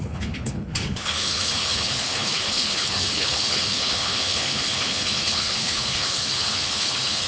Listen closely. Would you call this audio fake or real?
fake